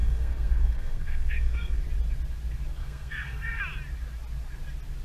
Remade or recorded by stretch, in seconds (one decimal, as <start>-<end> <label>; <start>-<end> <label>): 0.0-1.8 remade; 1.8-2.8 recorded; 2.8-3.6 remade; 3.6-5.0 recorded